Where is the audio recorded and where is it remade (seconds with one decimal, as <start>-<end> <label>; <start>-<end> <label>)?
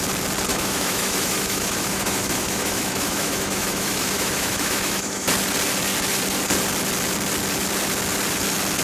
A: 0.0-0.5 recorded; 0.5-5.3 remade; 5.3-8.8 recorded